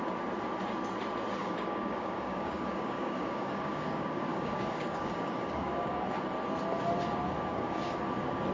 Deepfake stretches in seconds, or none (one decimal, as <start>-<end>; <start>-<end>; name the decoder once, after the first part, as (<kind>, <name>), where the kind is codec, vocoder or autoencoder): 1.4-6.2 (codec, DAC); 7.5-8.0